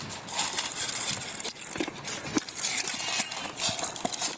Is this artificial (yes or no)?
no